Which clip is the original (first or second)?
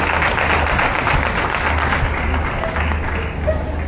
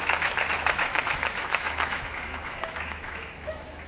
first